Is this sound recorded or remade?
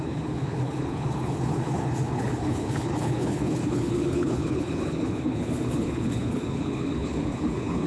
remade